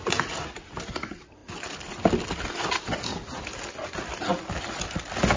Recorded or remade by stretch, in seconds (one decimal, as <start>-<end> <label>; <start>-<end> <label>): 0.0-5.4 recorded